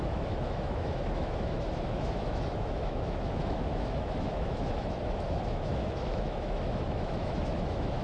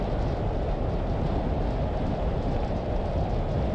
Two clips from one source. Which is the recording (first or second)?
second